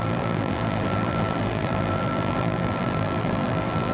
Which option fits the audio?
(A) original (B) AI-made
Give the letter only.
B